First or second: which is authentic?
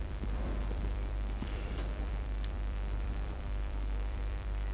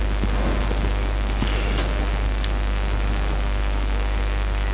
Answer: second